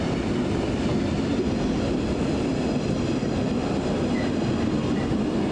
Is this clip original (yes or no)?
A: yes